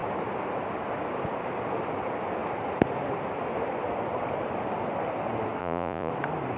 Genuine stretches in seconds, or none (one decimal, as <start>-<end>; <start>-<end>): 0.0-5.6; 6.1-6.6